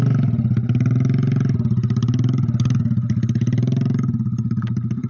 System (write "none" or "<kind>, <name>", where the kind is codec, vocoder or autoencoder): none